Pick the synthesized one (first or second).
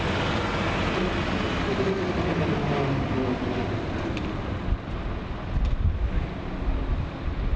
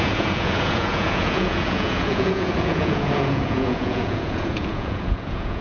second